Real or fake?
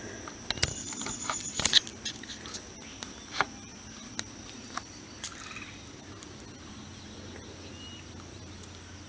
real